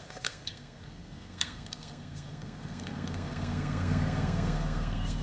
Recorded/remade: remade